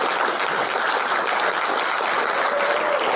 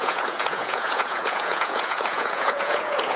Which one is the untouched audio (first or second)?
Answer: first